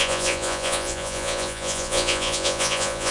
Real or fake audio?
fake